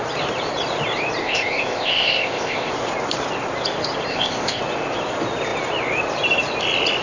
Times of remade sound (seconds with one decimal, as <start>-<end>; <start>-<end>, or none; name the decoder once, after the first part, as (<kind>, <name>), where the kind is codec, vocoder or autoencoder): 1.2-2.7 (codec, ZipCodec); 4.1-4.6